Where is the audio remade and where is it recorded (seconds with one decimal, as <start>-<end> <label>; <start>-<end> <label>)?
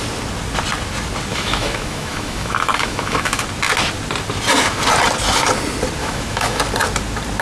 0.0-1.3 recorded; 1.3-3.4 remade; 3.4-6.0 recorded; 6.0-6.6 remade; 6.6-7.4 recorded